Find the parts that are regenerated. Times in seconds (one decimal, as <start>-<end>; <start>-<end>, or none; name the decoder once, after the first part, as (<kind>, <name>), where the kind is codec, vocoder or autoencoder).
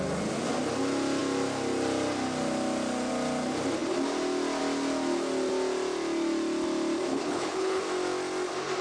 7.1-7.8 (codec, HILCodec)